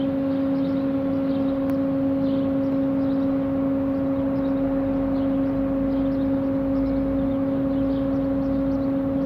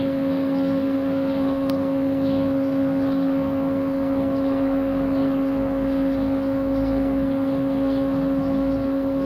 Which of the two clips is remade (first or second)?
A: second